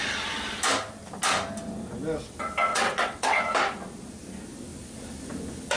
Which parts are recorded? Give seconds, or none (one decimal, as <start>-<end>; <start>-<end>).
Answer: 0.0-2.7; 3.4-5.8